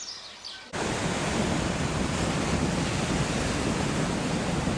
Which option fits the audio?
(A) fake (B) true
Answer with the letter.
B